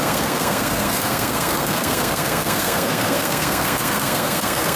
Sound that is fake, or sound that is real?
fake